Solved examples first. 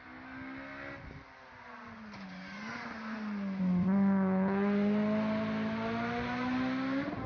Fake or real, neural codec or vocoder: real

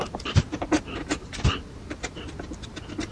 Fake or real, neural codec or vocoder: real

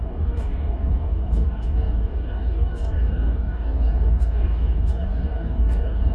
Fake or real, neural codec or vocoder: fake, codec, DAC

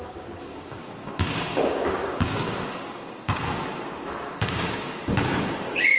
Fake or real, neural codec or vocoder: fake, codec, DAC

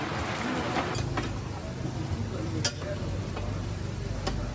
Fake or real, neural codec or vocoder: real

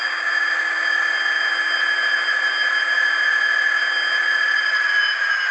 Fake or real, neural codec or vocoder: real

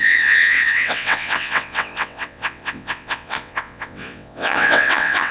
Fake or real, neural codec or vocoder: fake, vocoder, WaveNeXt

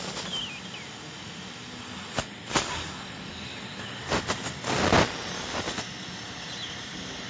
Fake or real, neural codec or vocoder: real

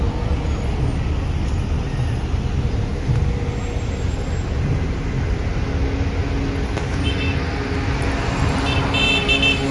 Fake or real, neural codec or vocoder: real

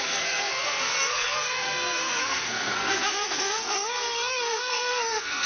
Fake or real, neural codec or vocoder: fake, codec, SNAC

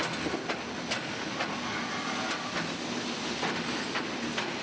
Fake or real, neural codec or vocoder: real